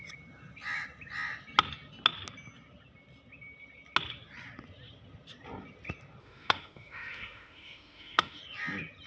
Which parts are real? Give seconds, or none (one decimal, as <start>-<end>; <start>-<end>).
0.0-6.2; 8.4-9.1